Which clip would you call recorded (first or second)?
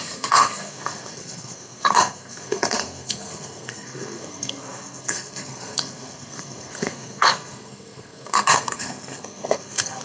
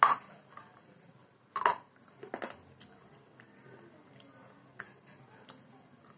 second